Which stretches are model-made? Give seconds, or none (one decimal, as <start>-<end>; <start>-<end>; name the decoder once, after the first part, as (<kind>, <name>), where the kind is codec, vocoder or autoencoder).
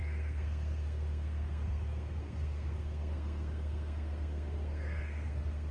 0.0-5.7 (codec, SNAC)